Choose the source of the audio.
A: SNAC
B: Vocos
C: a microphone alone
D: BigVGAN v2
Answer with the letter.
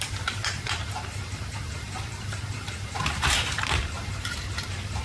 D